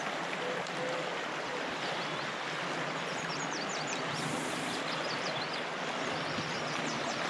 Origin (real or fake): real